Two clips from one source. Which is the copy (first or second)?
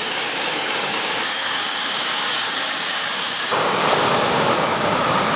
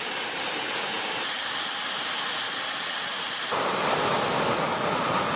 first